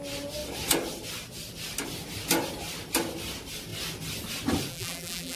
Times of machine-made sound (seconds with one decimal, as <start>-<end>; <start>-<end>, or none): 4.7-5.4